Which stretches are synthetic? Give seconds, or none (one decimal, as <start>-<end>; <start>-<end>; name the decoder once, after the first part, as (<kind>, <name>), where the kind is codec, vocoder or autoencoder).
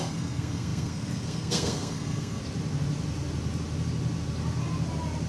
0.0-2.4 (codec, SNAC)